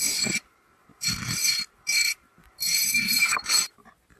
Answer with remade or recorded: remade